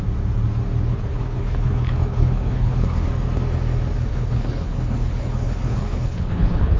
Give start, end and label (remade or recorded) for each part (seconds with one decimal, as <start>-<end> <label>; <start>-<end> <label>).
0.0-0.8 recorded; 0.8-3.1 remade; 3.1-4.1 recorded; 4.1-6.8 remade